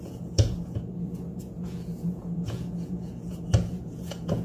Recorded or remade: remade